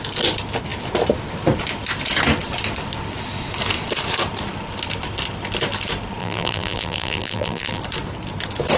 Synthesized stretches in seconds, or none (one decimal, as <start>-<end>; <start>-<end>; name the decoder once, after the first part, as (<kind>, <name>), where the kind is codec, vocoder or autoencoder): 6.2-7.8 (vocoder, BigVGAN v2)